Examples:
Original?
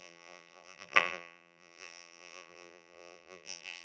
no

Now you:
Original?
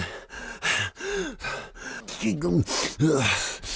yes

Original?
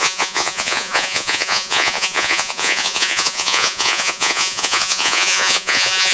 no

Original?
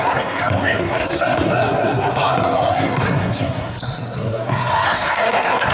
no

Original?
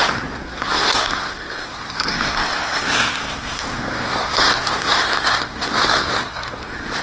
no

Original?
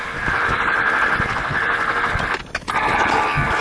no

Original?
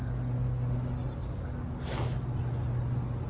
yes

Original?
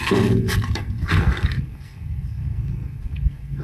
no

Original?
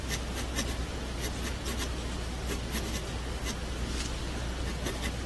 yes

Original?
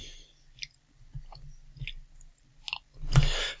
yes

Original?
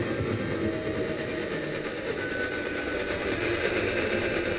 yes